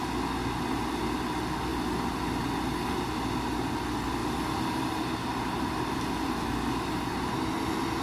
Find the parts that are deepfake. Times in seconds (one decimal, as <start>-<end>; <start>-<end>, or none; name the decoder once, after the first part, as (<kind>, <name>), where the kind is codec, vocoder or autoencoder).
none